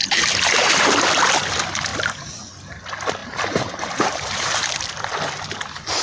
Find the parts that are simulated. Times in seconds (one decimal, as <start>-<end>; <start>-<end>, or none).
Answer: 0.0-1.4; 3.2-4.7